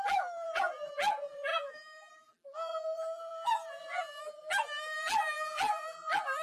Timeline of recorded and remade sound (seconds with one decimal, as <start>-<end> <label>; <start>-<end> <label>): 0.0-6.4 remade